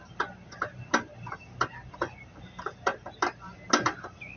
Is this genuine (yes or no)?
yes